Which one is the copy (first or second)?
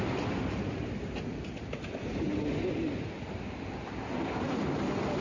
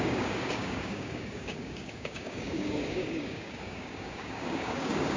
second